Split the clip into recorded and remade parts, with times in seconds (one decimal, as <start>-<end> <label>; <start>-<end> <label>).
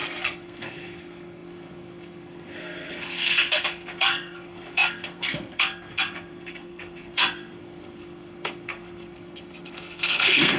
0.0-10.6 remade